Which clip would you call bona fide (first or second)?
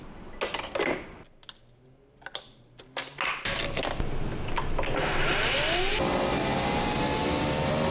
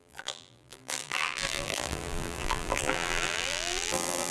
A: first